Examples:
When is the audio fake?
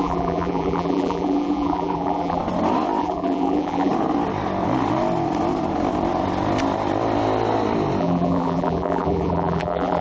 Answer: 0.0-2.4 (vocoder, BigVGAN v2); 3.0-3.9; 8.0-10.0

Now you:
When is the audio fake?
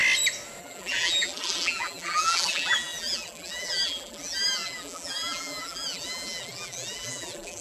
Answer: 0.6-7.6 (vocoder, BigVGAN v2)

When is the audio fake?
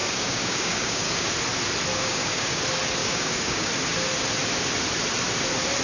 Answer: 0.0-1.3 (codec, DAC); 1.9-2.6; 3.0-3.7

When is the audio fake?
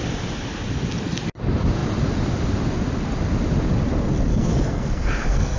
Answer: 4.3-5.6 (codec, SNAC)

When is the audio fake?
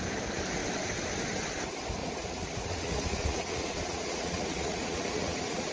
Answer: 2.0-5.7 (vocoder, Vocos)